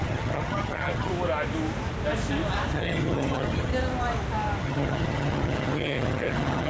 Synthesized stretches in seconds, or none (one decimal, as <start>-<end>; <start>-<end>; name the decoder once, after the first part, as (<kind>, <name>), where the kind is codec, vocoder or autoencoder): 0.0-1.1 (vocoder, HiFi-GAN); 2.7-3.7; 4.6-6.7